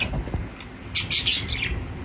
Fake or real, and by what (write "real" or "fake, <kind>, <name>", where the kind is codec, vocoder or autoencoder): real